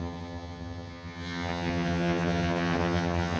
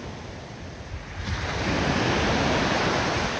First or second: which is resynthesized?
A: first